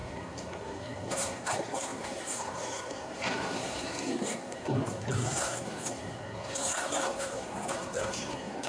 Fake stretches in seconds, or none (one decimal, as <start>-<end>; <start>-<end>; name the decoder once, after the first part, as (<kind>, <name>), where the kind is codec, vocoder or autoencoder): 0.0-8.7 (codec, SNAC)